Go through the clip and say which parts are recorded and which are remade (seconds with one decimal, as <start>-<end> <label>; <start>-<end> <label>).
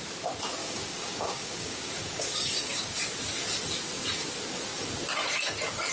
0.0-0.6 recorded; 0.6-3.0 remade; 3.0-5.9 recorded